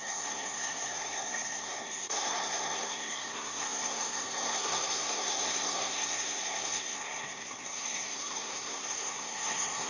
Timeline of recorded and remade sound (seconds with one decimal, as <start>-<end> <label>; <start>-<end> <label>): 0.0-9.9 remade